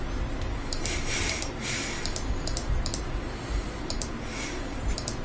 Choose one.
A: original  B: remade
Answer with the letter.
B